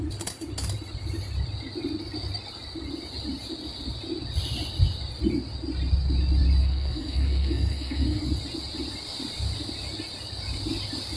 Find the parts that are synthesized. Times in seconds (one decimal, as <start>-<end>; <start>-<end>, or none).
6.6-8.2